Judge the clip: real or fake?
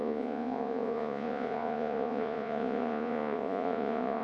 fake